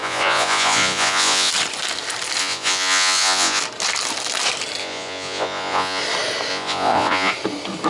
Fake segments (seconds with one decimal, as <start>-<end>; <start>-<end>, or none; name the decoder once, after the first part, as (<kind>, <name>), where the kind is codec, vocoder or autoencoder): 0.0-1.5 (vocoder, Vocos); 2.4-3.6; 4.8-6.0; 6.5-7.3

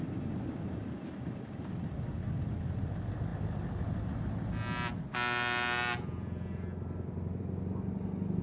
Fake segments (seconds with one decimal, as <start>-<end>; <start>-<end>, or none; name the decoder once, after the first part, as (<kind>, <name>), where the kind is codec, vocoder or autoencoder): none

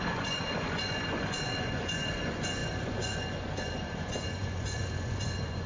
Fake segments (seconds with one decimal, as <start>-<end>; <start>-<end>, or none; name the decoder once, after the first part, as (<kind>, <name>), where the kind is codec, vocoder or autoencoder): 0.0-5.7 (vocoder, Vocos)

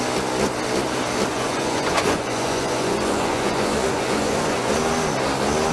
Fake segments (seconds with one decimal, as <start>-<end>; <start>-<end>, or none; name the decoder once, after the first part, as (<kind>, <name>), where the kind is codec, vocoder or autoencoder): 1.3-4.7 (vocoder, Vocos)

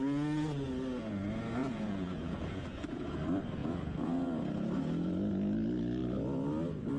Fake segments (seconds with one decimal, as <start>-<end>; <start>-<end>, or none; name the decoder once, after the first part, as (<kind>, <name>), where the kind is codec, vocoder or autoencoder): 1.6-3.2 (vocoder, Vocos); 3.6-4.5

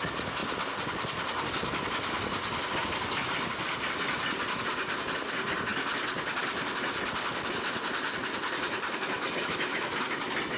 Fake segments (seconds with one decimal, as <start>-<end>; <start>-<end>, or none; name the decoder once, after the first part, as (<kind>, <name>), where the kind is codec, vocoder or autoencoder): none

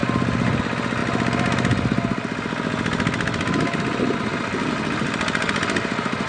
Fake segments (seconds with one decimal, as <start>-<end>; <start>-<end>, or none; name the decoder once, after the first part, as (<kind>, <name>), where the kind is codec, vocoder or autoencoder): none